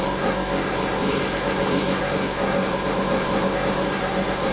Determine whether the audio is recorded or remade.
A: remade